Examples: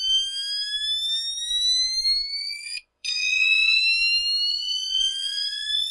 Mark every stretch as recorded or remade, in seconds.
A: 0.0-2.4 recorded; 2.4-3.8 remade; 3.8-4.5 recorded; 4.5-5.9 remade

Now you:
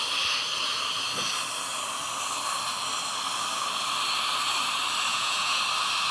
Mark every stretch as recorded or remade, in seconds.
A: 0.0-5.1 recorded; 5.1-5.6 remade; 5.6-6.1 recorded

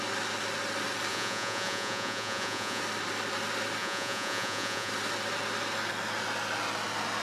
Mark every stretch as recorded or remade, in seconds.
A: 0.0-1.1 recorded; 1.1-2.8 remade; 2.8-3.8 recorded; 3.8-4.9 remade; 4.9-7.2 recorded

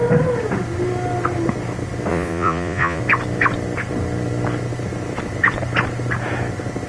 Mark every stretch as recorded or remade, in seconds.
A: 0.0-2.1 recorded; 2.1-3.0 remade; 3.0-6.9 recorded